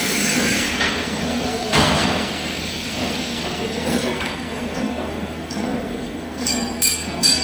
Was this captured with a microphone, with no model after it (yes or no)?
no